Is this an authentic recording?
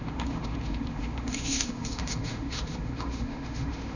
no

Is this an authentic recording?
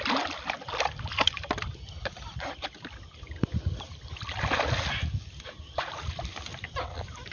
yes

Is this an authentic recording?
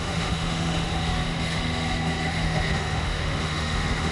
no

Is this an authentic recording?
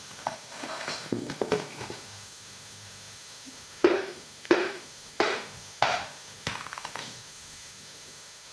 no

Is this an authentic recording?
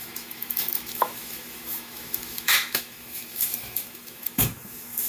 no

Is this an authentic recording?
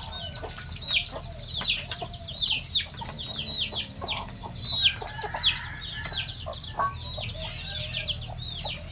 yes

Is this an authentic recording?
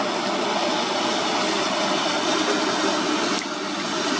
yes